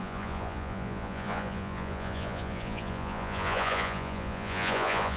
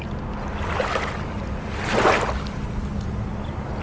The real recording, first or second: second